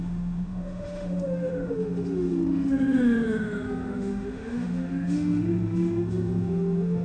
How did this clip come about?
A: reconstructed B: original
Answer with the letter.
A